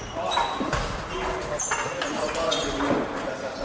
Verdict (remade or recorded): recorded